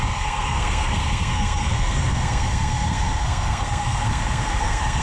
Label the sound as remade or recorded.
remade